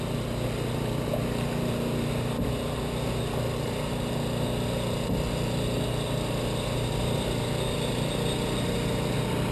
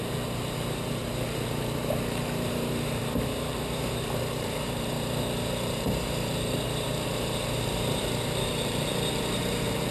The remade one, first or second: second